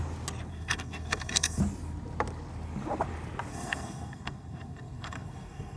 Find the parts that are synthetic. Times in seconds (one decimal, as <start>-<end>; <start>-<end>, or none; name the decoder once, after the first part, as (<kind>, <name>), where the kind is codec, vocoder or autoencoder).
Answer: 0.5-1.6 (codec, SNAC); 3.5-5.8